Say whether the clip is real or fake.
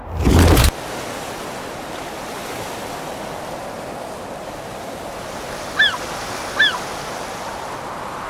real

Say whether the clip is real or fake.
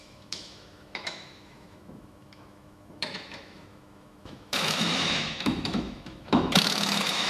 fake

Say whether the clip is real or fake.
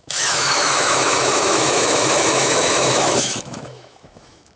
fake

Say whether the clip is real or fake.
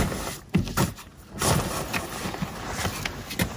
real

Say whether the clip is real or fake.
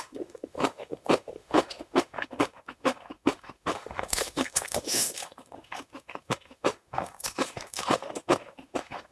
fake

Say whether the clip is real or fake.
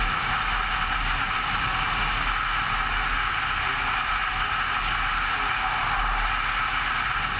real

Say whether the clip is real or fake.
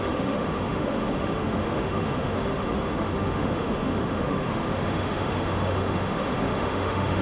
fake